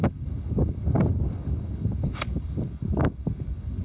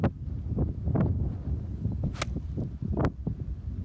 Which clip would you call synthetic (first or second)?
first